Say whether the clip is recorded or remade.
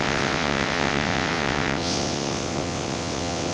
remade